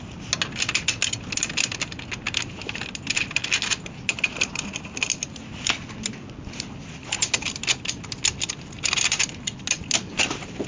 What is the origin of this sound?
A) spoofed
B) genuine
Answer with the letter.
B